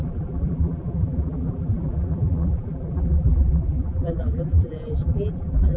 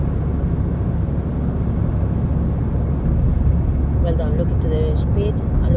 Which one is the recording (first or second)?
second